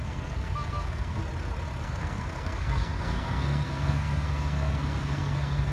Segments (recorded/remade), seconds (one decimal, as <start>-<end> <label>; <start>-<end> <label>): 0.0-1.2 remade; 1.2-1.8 recorded; 1.8-5.7 remade